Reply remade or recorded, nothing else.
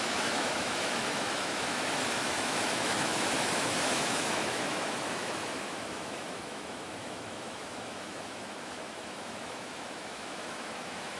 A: remade